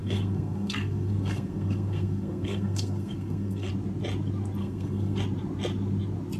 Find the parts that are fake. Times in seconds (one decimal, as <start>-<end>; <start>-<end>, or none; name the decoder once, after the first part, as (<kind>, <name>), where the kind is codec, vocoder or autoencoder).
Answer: 0.0-3.7 (codec, SNAC); 4.6-5.2